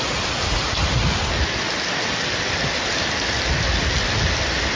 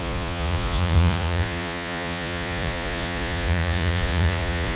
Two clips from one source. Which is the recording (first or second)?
first